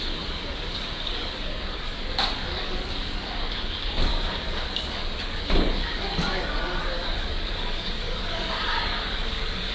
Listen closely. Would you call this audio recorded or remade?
remade